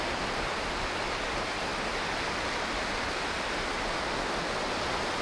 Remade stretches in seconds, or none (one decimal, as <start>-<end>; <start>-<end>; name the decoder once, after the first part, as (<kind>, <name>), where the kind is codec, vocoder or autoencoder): none